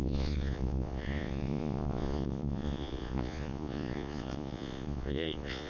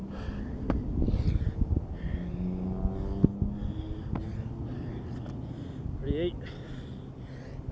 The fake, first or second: first